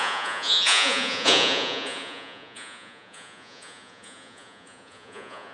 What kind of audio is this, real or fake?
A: fake